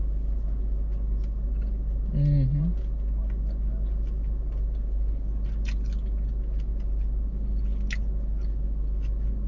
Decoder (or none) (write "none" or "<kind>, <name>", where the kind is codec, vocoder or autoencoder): none